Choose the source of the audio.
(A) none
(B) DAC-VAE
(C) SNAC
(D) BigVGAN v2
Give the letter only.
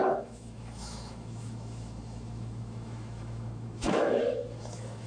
B